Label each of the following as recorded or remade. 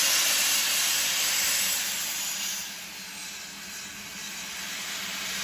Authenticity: recorded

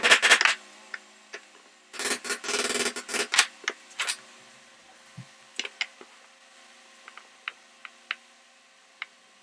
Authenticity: recorded